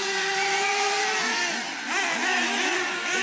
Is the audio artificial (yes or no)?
no